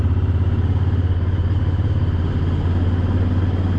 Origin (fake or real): real